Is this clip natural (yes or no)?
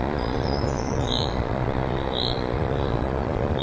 no